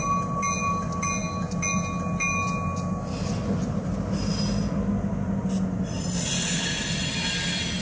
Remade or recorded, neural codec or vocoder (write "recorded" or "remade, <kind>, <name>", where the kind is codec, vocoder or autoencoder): recorded